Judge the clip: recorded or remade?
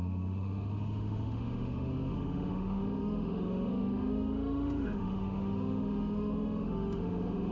remade